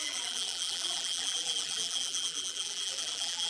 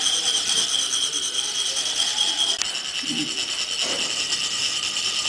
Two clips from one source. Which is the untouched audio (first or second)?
second